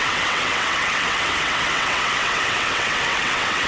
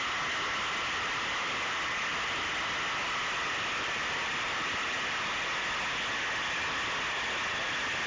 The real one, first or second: second